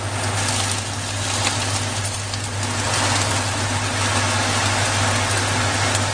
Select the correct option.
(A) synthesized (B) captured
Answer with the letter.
B